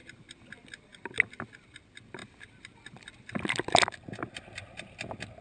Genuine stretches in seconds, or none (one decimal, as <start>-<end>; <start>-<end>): 0.0-5.4